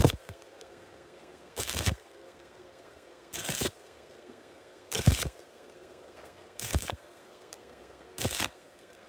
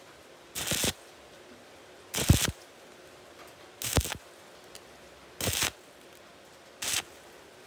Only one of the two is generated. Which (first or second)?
first